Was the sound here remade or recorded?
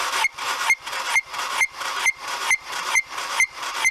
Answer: remade